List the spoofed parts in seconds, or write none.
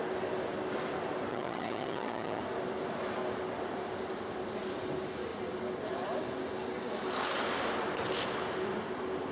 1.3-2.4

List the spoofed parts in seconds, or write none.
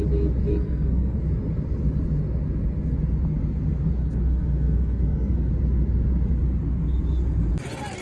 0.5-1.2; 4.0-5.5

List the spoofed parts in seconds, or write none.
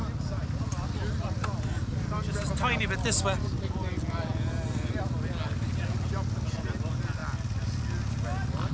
none